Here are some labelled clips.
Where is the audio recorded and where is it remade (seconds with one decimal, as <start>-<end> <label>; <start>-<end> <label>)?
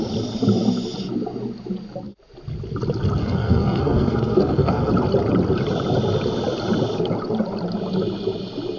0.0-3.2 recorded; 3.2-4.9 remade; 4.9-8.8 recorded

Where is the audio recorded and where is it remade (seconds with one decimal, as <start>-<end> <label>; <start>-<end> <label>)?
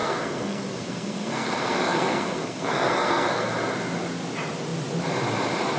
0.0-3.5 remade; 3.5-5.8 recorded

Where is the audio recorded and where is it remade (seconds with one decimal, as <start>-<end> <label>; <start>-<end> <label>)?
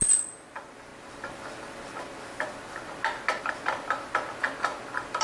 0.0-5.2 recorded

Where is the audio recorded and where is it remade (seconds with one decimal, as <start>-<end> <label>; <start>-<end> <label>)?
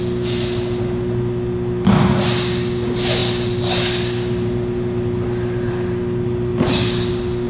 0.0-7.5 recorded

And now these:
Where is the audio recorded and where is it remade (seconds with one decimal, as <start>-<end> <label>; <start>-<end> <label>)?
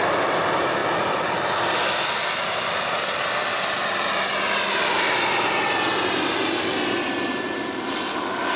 0.0-8.6 recorded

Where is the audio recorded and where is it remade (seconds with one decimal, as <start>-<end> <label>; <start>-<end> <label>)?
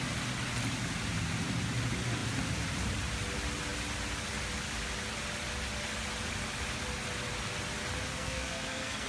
0.0-8.1 recorded; 8.1-9.1 remade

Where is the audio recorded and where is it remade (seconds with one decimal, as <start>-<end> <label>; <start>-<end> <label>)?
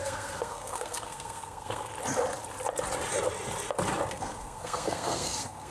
0.0-1.9 remade; 1.9-4.1 recorded; 4.1-5.7 remade